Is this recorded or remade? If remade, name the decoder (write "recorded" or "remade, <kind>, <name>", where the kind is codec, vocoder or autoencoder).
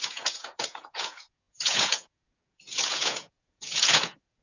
remade, vocoder, Vocos